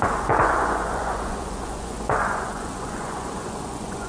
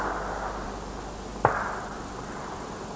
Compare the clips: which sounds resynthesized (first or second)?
first